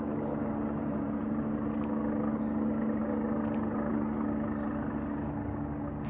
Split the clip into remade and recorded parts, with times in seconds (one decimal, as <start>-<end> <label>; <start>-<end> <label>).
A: 0.0-0.8 recorded; 0.8-1.3 remade; 1.3-6.1 recorded